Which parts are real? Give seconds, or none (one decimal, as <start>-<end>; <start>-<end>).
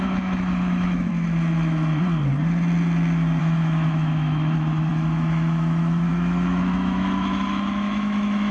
1.1-3.4